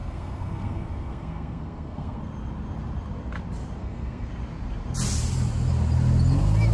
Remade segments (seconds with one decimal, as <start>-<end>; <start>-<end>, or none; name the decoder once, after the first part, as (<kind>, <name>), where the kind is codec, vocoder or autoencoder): 0.0-2.2 (codec, SNAC); 3.8-4.3